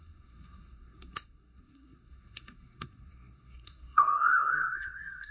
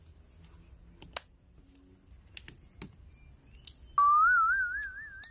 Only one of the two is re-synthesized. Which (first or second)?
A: first